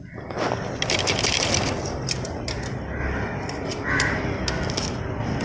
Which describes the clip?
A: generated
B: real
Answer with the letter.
B